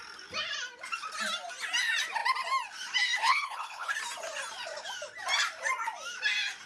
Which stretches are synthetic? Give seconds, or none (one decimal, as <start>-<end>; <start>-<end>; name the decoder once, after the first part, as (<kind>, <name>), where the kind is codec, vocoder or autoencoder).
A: 3.2-3.9 (codec, HILCodec)